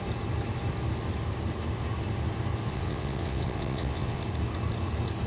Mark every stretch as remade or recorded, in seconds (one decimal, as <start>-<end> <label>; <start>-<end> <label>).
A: 0.0-2.7 recorded; 2.7-4.2 remade; 4.2-5.3 recorded